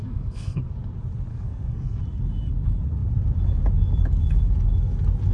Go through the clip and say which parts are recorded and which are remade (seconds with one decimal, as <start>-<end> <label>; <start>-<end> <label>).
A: 0.0-0.7 remade; 0.7-1.3 recorded; 1.3-2.0 remade; 2.0-5.3 recorded